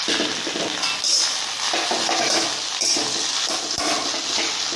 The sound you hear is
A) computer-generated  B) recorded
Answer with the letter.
B